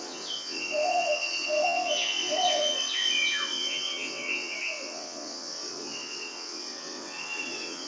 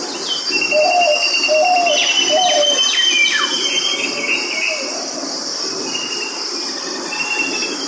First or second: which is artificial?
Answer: first